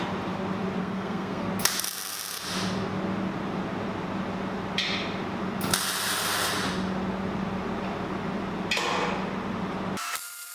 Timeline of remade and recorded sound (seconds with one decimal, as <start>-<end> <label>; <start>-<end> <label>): 0.0-0.8 recorded; 0.8-1.5 remade; 1.5-10.5 recorded